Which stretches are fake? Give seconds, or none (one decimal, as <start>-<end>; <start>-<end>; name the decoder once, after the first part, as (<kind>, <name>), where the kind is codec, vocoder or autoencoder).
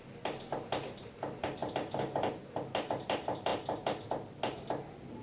none